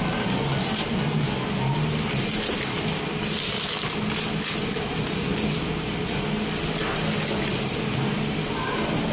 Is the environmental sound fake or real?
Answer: real